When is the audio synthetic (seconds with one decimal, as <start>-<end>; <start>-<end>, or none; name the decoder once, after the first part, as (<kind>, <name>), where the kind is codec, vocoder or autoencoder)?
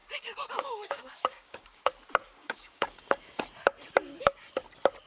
0.0-1.9 (codec, DAC); 2.4-3.4